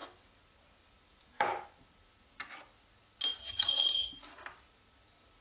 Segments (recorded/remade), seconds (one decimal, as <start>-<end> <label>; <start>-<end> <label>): 0.0-3.4 recorded; 3.4-4.1 remade; 4.1-5.4 recorded